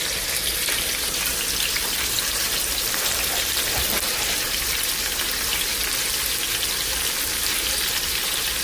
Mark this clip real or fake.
fake